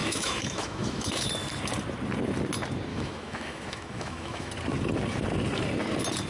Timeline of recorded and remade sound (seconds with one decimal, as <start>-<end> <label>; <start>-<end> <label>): 0.0-1.3 remade; 1.3-2.9 recorded; 2.9-4.5 remade; 4.5-6.3 recorded